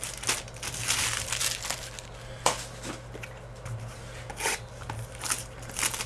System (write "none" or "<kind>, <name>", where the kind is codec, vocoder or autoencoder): none